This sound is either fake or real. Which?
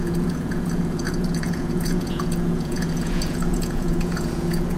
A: fake